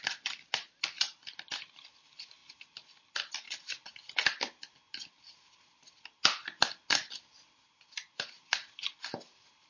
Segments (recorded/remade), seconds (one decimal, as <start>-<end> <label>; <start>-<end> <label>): 0.0-9.7 recorded